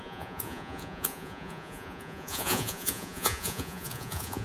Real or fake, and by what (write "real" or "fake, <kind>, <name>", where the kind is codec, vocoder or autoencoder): fake, vocoder, Vocos